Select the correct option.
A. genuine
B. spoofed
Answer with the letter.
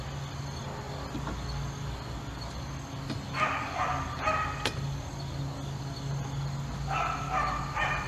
A